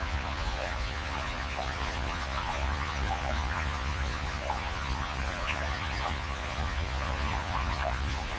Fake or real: fake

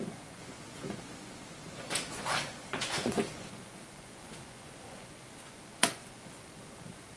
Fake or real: fake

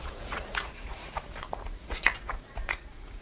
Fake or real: fake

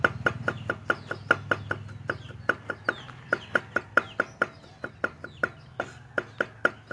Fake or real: real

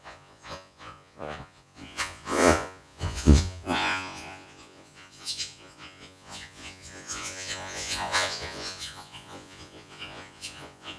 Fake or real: fake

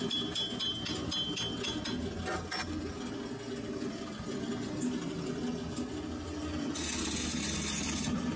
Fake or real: real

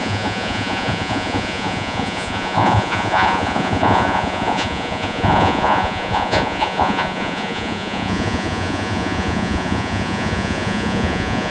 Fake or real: fake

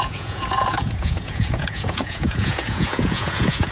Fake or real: fake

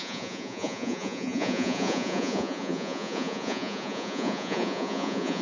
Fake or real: fake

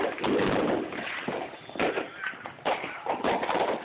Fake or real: real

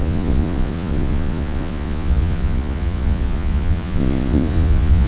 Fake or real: fake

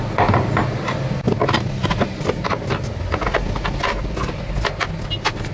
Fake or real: real